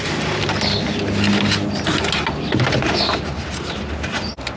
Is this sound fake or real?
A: real